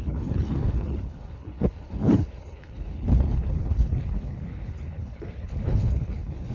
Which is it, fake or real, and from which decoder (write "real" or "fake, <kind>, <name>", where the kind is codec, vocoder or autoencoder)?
fake, codec, HILCodec